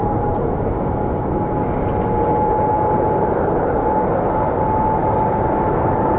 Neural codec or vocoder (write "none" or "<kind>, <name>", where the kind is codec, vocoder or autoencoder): none